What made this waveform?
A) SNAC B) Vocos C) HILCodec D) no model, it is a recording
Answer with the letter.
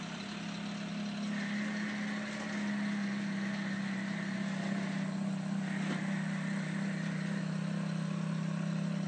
D